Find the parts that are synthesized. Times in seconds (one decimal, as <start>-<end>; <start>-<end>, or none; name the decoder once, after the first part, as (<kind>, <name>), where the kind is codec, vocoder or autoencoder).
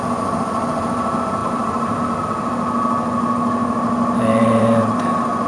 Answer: 1.4-2.2 (vocoder, BigVGAN v2); 4.3-5.0